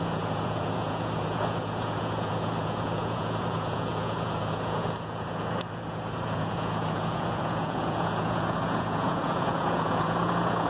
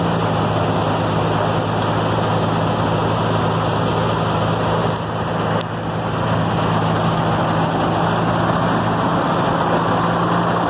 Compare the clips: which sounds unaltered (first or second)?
second